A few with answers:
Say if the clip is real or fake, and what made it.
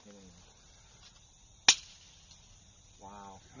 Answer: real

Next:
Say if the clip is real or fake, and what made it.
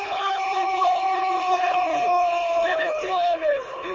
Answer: fake, codec, HILCodec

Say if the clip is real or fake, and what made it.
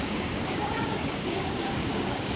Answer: fake, codec, DAC